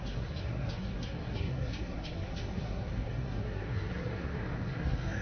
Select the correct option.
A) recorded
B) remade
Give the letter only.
B